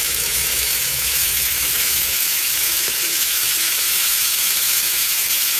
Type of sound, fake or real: fake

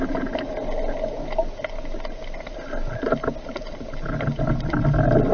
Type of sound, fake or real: real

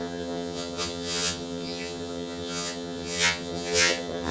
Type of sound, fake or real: fake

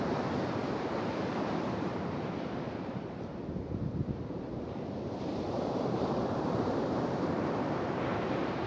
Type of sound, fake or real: fake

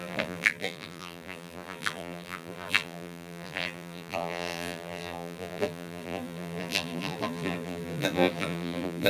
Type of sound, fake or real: fake